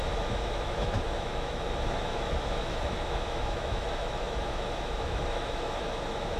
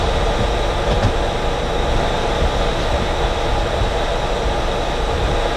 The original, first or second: second